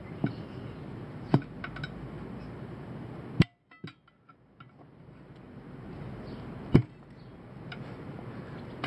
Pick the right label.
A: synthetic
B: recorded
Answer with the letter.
B